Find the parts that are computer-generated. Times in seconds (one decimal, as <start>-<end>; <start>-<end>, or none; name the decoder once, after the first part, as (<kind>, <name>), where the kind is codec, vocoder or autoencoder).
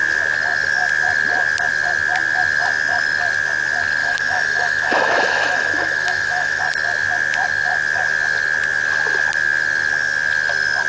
4.0-6.6 (autoencoder, DAC-VAE)